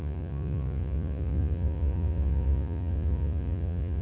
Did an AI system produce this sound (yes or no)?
yes